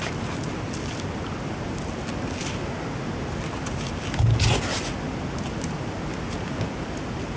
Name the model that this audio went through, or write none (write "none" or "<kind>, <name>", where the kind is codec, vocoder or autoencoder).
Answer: none